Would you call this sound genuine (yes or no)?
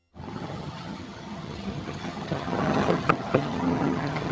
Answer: no